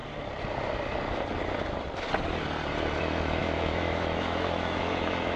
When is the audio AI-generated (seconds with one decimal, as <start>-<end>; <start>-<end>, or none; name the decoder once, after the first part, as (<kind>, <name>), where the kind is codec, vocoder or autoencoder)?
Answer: 3.0-5.4 (autoencoder, DAC-VAE)

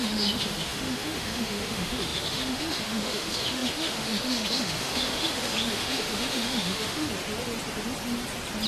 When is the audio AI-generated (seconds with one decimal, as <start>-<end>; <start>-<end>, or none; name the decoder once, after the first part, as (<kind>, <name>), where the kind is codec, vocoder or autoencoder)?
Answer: 0.0-7.1 (autoencoder, DAC-VAE)

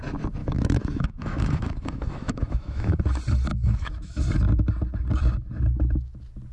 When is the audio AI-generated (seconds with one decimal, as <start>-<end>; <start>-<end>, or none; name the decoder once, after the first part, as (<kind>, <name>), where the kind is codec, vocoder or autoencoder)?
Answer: 0.4-3.0 (autoencoder, DAC-VAE); 3.5-4.2

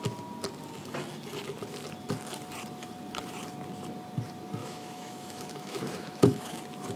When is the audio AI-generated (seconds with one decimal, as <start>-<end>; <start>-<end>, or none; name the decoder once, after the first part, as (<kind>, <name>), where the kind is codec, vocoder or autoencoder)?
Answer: 4.6-6.6 (autoencoder, DAC-VAE)

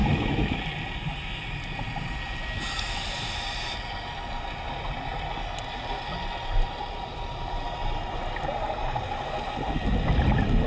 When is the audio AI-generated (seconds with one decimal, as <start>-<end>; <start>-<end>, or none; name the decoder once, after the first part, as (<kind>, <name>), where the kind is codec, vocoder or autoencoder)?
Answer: 0.0-0.6 (autoencoder, DAC-VAE)

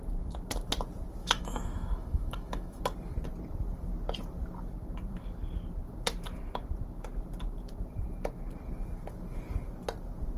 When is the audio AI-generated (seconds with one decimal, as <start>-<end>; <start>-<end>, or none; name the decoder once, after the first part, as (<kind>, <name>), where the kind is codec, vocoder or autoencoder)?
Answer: 1.2-2.8 (autoencoder, DAC-VAE)